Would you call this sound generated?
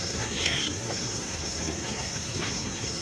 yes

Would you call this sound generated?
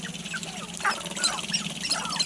no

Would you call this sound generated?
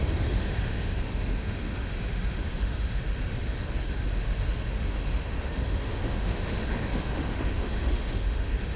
yes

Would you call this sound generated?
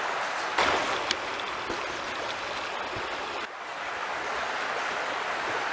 no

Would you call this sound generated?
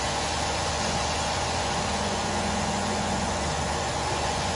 yes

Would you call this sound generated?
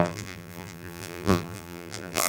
yes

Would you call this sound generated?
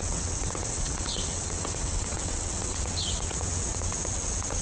yes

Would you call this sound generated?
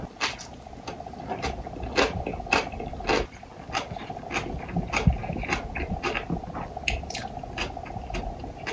no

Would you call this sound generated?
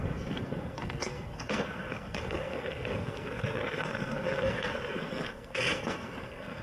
yes